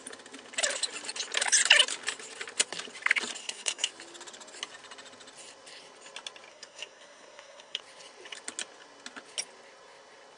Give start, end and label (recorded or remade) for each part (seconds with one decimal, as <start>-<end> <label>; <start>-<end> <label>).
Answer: 0.0-3.4 recorded; 3.4-3.9 remade; 3.9-6.5 recorded; 6.5-7.8 remade; 7.8-10.4 recorded